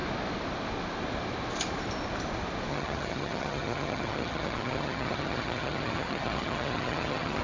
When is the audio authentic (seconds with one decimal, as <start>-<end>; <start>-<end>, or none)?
0.0-2.7